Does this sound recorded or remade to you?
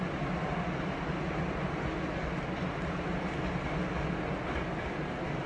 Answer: recorded